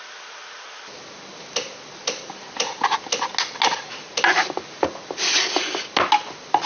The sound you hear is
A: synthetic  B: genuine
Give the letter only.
B